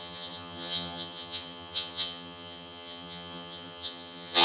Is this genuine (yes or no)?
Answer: no